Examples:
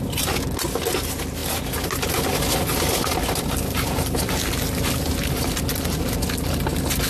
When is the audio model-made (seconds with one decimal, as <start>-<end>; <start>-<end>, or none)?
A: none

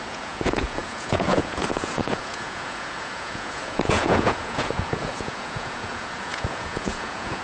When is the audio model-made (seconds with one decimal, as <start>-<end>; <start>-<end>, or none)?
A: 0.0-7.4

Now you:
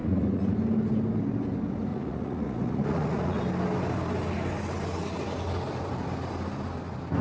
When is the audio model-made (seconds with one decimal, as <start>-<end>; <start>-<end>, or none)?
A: 0.0-0.5; 1.9-3.4

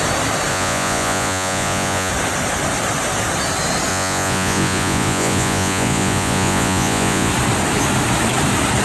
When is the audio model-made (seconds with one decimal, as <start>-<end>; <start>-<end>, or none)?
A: 0.5-2.1; 3.9-7.3